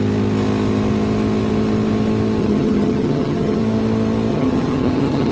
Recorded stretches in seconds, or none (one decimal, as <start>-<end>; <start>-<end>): 0.0-2.4; 3.6-4.3